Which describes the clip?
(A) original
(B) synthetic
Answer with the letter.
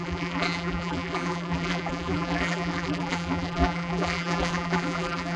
B